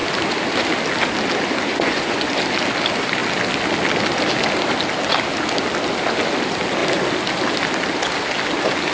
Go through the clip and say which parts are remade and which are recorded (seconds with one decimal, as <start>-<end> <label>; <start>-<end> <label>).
0.0-1.7 recorded; 1.7-2.3 remade; 2.3-8.9 recorded